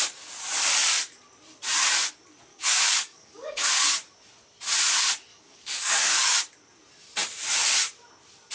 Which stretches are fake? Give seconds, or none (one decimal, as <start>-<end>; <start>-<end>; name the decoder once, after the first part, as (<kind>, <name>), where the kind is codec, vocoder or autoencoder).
2.5-3.9 (codec, DAC); 5.3-6.4